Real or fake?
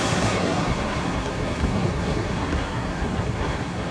fake